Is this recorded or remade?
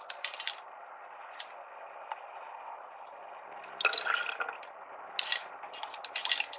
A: recorded